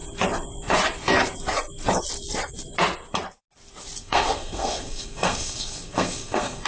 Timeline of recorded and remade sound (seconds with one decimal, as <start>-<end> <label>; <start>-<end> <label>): 0.0-4.0 recorded; 4.0-6.7 remade